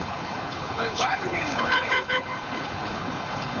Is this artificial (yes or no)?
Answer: yes